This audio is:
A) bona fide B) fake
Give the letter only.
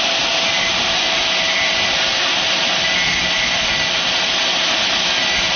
A